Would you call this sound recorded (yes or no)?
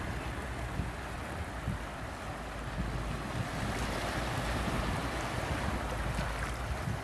yes